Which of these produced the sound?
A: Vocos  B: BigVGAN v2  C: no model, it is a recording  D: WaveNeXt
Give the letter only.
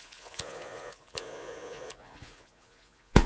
A